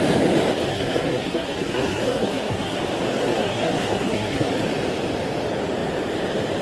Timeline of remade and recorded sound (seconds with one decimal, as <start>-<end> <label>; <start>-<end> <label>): 0.0-0.7 recorded; 0.7-2.8 remade; 2.8-3.2 recorded; 3.2-4.5 remade; 4.5-6.6 recorded